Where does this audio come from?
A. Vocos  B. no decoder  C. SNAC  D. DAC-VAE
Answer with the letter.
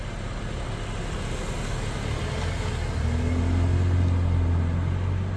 B